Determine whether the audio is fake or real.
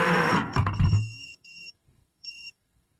fake